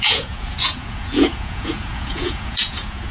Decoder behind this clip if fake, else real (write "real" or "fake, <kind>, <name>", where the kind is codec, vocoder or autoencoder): fake, vocoder, Vocos